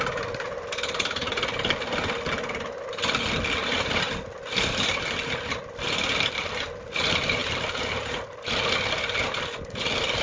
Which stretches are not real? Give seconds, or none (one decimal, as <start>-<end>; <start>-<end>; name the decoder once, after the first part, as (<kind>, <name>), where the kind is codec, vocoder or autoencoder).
none